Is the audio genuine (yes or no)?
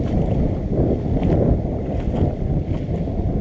yes